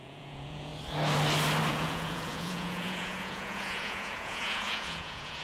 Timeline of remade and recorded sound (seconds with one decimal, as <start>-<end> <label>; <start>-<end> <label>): 0.0-0.7 remade; 0.7-1.7 recorded; 1.7-5.4 remade